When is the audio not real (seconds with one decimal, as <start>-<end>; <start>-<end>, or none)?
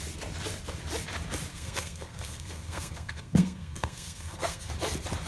1.5-4.7